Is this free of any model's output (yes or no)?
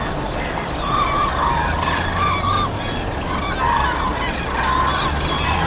yes